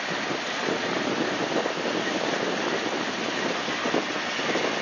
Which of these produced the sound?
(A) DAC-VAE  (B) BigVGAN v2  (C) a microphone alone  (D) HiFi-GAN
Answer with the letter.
C